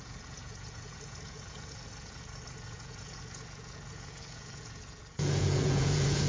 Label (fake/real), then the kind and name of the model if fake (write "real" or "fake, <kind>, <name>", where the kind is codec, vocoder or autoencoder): fake, vocoder, Vocos